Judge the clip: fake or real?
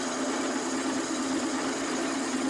real